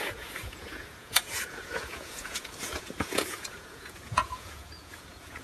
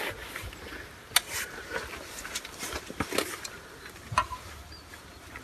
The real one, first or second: second